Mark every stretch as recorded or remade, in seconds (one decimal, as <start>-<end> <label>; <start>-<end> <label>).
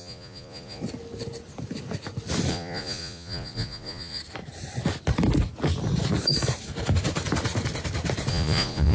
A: 0.0-0.8 remade; 0.8-2.5 recorded; 2.5-4.2 remade; 4.2-8.3 recorded; 8.3-8.9 remade